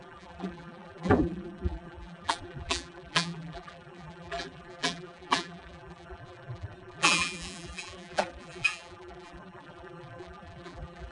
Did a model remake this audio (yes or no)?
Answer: yes